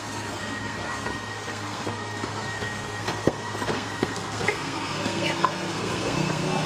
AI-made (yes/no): yes